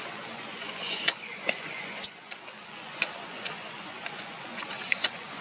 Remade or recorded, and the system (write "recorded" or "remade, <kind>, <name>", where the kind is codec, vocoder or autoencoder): remade, vocoder, Vocos